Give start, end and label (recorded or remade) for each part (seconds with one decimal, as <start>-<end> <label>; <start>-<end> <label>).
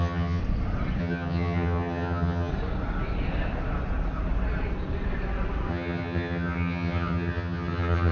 0.0-0.4 remade; 0.4-1.0 recorded; 1.0-2.5 remade; 2.5-5.7 recorded; 5.7-8.1 remade